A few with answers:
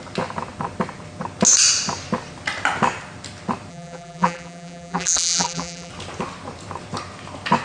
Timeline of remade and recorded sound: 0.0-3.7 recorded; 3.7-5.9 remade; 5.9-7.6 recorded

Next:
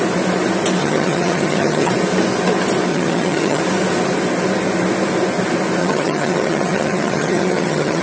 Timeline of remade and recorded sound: 0.0-0.8 recorded; 0.8-1.9 remade; 1.9-2.9 recorded; 2.9-3.6 remade; 3.6-5.8 recorded; 5.8-8.0 remade